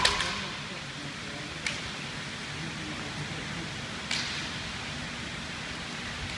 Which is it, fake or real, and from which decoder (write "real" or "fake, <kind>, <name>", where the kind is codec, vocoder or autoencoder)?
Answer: real